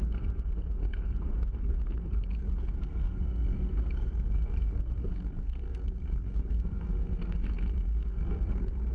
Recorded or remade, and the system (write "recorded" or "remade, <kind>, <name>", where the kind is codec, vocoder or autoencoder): remade, codec, SNAC